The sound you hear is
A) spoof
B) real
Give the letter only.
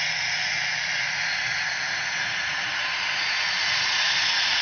A